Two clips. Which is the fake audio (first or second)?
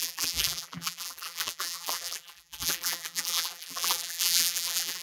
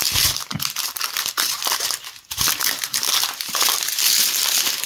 first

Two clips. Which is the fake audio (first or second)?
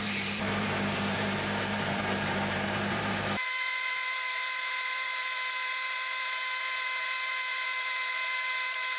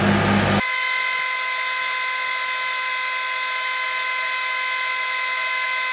first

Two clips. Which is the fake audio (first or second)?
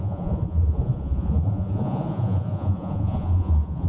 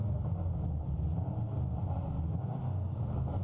first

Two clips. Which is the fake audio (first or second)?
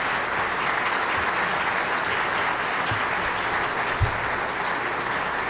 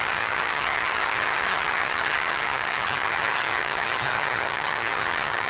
second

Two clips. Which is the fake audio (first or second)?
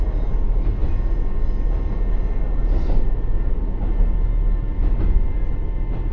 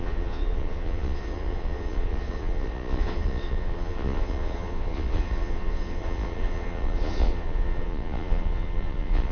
second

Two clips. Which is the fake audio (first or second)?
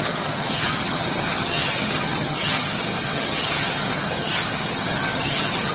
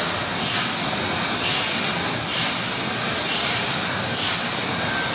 first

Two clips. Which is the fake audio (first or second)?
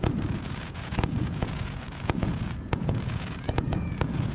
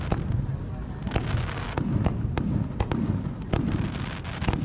first